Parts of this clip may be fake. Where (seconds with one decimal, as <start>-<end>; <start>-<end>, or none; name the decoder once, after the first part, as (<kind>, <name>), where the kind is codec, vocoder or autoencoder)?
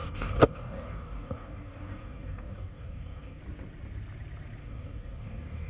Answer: 0.0-3.4 (codec, DAC); 4.6-5.7